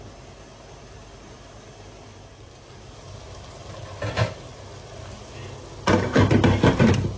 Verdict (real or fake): real